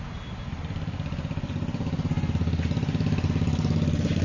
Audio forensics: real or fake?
real